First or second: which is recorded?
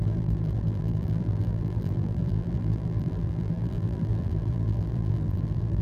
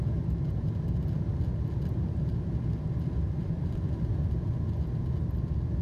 second